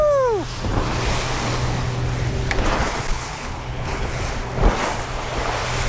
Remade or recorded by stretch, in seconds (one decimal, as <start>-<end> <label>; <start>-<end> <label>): 0.0-3.1 recorded; 3.1-4.2 remade; 4.2-5.9 recorded